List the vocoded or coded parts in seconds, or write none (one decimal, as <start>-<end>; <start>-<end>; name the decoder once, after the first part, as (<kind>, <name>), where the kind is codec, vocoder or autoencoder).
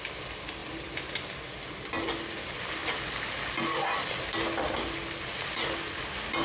none